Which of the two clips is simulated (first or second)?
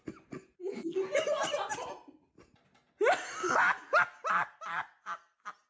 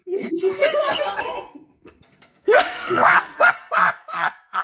second